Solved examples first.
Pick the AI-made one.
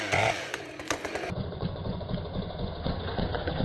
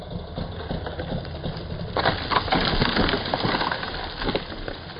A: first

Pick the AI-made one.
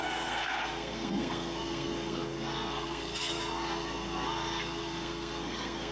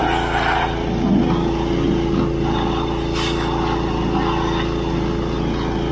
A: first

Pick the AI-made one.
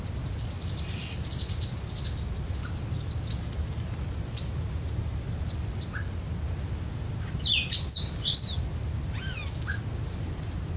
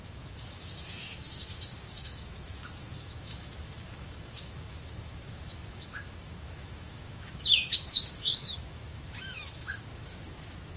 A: second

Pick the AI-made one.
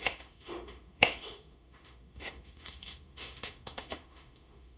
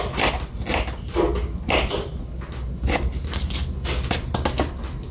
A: first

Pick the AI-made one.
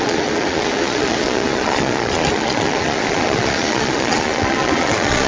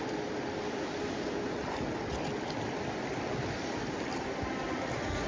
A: first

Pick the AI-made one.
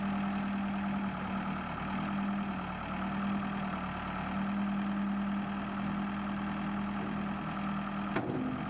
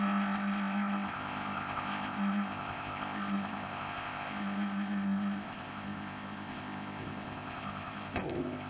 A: second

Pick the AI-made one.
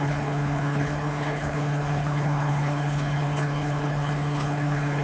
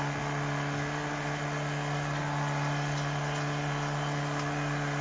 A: first